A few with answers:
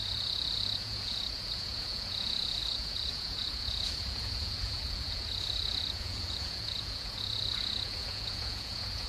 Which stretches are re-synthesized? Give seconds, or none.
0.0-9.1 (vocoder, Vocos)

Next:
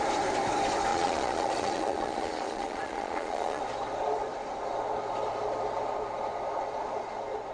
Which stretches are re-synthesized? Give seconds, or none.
0.9-3.6 (vocoder, Vocos)

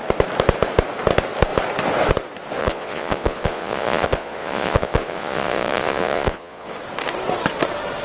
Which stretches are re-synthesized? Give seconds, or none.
2.6-6.7 (vocoder, Vocos)

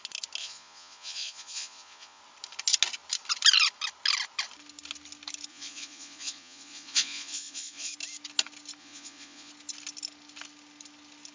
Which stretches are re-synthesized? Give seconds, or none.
0.4-2.2 (vocoder, Vocos); 5.5-7.9; 8.8-9.5

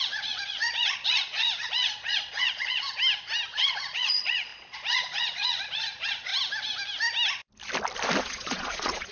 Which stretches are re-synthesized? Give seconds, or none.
0.0-3.0 (vocoder, Vocos); 3.5-6.3; 8.2-9.1